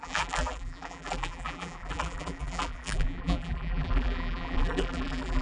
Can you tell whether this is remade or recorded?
remade